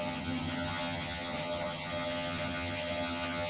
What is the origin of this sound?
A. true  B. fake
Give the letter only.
B